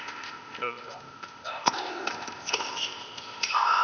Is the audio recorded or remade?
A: remade